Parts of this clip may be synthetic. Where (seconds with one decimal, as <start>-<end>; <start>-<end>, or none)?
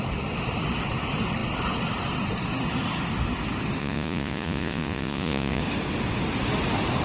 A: 3.8-5.6